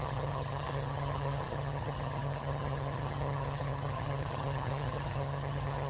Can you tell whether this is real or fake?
fake